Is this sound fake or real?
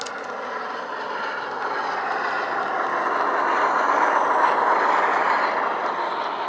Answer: real